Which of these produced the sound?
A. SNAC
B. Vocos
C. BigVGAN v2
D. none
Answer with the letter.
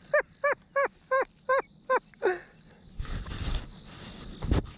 D